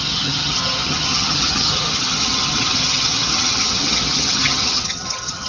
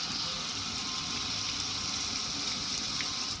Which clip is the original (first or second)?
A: second